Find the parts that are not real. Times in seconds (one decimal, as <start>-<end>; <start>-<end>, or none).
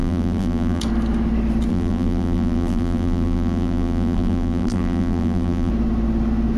0.0-0.8; 1.7-5.7